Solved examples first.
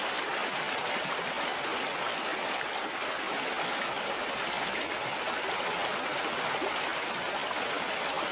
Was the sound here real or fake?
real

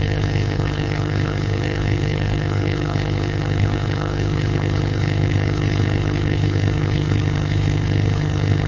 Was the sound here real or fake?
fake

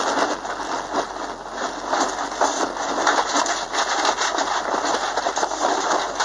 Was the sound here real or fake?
real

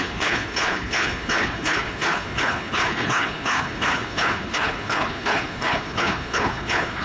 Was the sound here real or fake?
fake